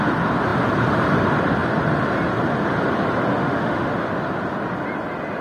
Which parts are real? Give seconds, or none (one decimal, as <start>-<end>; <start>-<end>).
0.0-3.4; 3.9-5.4